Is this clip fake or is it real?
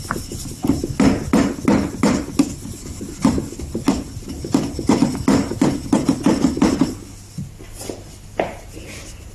real